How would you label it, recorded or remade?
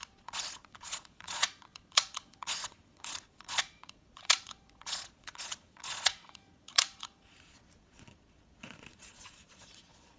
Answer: remade